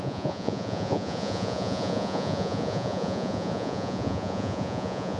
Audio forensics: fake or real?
fake